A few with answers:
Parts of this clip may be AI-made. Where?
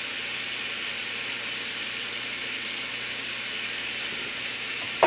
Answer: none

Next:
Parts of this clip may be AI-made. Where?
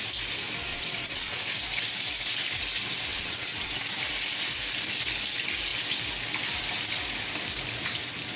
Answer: 0.7-1.3; 3.1-3.9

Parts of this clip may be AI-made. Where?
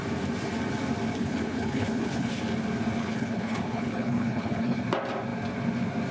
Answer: 1.2-2.4; 3.0-4.8